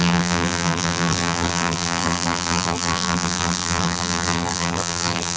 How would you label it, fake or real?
fake